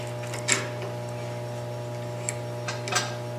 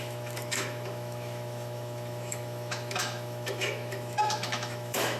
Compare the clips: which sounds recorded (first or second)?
first